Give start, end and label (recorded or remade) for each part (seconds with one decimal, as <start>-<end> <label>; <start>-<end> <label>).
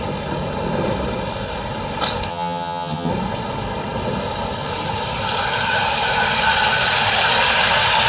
0.0-2.3 recorded; 2.3-3.1 remade; 3.1-8.1 recorded